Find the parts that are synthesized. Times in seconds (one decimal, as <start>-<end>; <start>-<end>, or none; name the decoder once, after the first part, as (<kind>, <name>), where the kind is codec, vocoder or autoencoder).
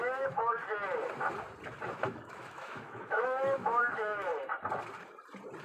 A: 0.0-0.6 (autoencoder, DAC-VAE); 1.9-4.3